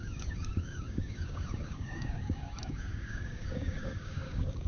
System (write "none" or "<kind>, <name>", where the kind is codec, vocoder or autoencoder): codec, DAC